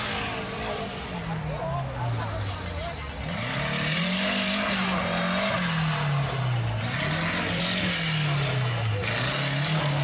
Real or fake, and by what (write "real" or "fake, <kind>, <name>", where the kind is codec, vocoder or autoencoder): real